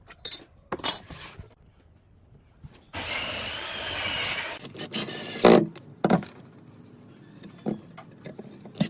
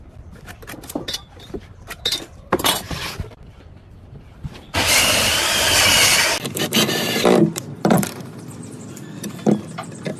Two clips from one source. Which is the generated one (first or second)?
second